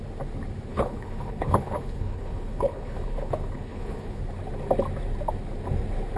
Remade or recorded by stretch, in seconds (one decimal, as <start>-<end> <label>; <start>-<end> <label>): 0.0-0.7 recorded; 0.7-4.2 remade; 4.2-6.2 recorded

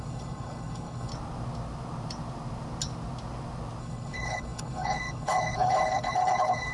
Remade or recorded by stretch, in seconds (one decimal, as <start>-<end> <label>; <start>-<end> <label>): 0.0-1.1 remade; 1.1-3.8 recorded; 3.8-6.7 remade

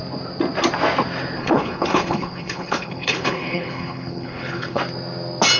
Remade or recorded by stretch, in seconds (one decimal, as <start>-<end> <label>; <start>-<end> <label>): 0.0-1.4 recorded; 1.4-4.8 remade; 4.8-5.6 recorded

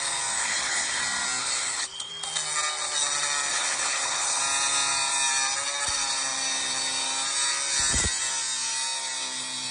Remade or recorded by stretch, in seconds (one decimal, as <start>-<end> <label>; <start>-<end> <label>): 0.0-0.4 recorded; 0.4-1.0 remade; 1.0-1.4 recorded; 1.4-2.1 remade; 2.1-3.5 recorded; 3.5-4.4 remade; 4.4-9.7 recorded

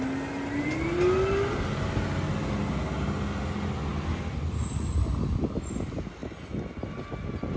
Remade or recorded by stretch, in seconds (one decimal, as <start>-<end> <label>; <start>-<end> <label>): 0.0-7.6 recorded